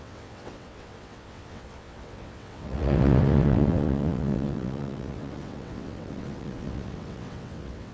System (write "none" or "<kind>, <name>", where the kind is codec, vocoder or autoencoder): vocoder, WaveNeXt